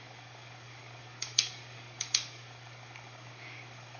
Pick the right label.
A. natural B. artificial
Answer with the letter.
B